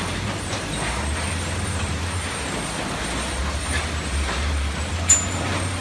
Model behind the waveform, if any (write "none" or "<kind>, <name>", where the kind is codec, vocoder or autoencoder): vocoder, BigVGAN v2